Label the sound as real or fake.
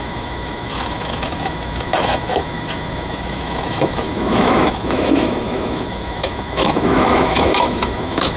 fake